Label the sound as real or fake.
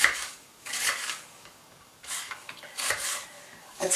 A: fake